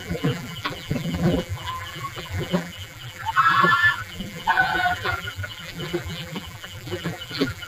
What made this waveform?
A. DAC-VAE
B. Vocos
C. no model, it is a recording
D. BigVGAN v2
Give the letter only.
D